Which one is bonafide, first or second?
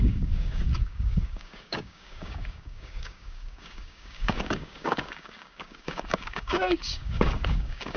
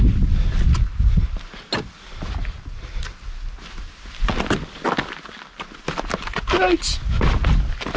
second